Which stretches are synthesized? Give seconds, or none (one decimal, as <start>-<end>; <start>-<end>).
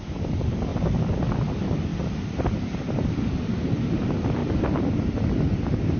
none